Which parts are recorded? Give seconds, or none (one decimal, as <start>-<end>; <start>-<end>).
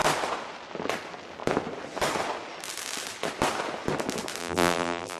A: 0.0-4.4